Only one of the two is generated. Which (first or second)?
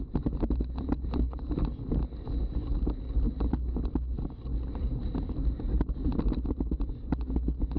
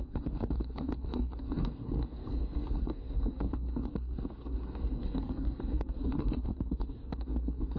second